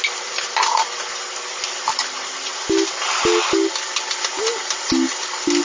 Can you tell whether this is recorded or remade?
recorded